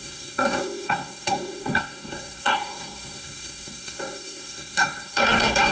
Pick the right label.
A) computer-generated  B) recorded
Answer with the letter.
A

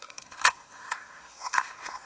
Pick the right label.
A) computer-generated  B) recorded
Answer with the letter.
A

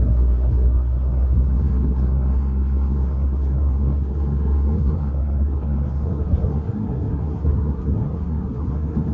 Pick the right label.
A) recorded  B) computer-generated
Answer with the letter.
B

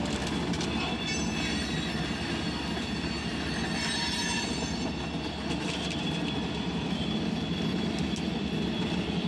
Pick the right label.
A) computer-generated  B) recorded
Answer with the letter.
B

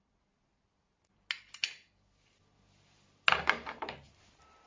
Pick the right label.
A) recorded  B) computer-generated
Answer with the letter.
A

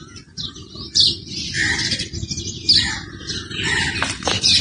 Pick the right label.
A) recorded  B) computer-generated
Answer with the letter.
A